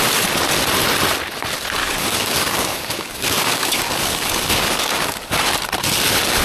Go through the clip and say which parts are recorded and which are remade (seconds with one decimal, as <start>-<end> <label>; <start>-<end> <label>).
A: 0.0-1.8 recorded; 1.8-5.5 remade; 5.5-6.4 recorded